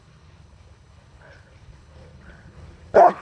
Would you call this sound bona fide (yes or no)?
no